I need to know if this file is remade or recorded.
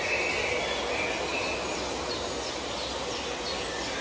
recorded